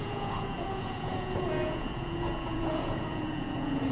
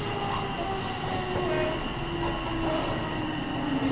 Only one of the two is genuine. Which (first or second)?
second